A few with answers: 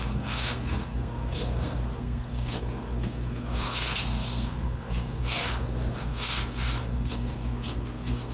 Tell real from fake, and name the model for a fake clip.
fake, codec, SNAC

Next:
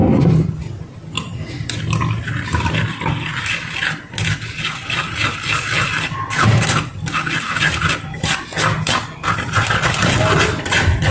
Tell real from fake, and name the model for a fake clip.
real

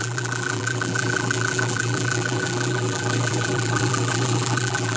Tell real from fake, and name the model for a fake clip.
fake, vocoder, BigVGAN v2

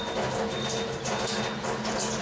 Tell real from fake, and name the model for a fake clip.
real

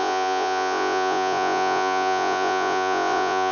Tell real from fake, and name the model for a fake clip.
fake, vocoder, Vocos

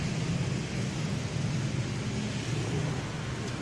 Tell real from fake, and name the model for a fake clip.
real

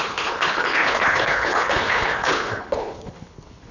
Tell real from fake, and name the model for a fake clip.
fake, codec, HILCodec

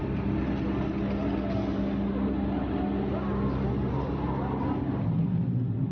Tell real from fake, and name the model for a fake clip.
real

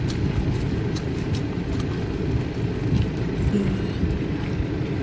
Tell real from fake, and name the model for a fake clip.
real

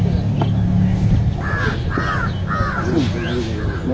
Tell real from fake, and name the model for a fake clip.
real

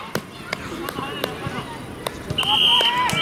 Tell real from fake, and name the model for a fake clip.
real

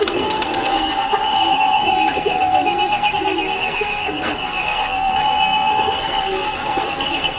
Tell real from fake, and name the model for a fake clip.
fake, codec, SNAC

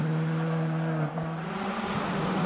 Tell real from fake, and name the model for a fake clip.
real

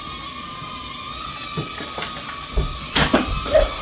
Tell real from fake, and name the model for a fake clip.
real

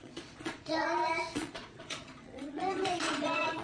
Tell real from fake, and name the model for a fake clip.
fake, vocoder, Vocos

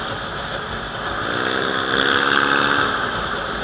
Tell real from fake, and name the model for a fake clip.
real